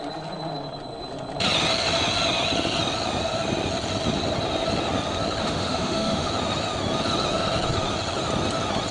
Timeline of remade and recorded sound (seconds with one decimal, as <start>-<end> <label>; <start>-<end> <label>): 0.0-5.4 recorded; 5.4-6.3 remade; 6.3-8.9 recorded